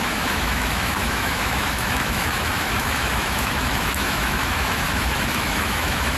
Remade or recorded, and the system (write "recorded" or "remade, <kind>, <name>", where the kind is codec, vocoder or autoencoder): remade, autoencoder, DAC-VAE